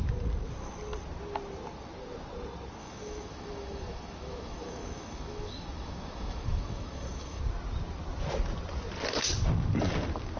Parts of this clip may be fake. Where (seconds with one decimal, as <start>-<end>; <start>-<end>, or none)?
2.8-7.4